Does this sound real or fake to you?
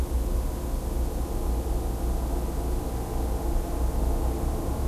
real